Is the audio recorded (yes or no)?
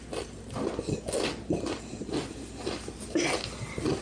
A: yes